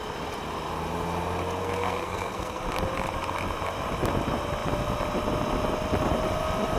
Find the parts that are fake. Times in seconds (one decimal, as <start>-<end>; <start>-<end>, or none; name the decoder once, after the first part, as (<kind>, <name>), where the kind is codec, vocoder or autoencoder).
1.6-2.6 (codec, SNAC)